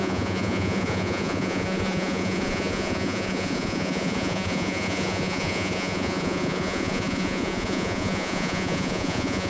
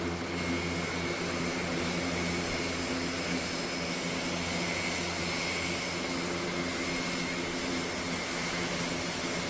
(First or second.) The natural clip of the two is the second